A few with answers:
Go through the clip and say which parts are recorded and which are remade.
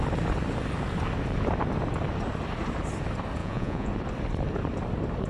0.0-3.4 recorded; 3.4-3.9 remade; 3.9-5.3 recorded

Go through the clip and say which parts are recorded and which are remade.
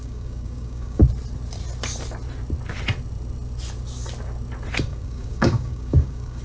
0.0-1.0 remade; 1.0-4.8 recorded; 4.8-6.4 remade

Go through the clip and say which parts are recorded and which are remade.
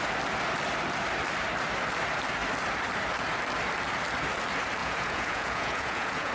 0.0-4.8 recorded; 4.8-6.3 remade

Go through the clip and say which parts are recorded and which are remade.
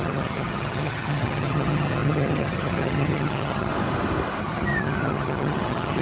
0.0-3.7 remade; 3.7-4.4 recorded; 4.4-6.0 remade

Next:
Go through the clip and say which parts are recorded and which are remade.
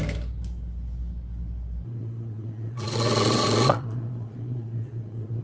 0.0-2.0 recorded; 2.0-5.4 remade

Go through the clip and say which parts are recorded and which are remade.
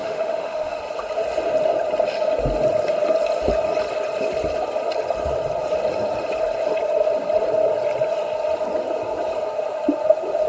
0.0-0.8 remade; 0.8-10.5 recorded